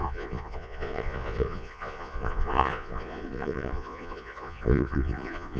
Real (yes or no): no